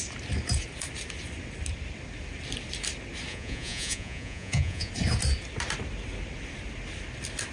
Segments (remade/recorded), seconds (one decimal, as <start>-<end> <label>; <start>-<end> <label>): 0.0-3.3 recorded; 3.3-4.9 remade; 4.9-7.5 recorded